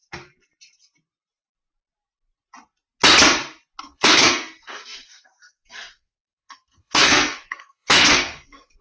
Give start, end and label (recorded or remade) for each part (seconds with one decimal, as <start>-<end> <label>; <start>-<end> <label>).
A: 0.0-3.8 recorded; 3.8-8.8 remade